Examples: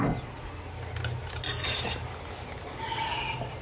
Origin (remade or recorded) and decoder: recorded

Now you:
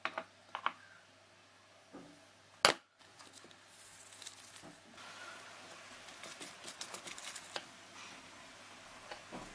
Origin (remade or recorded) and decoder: recorded